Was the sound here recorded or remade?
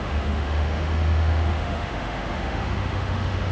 remade